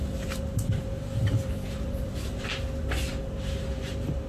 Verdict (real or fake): fake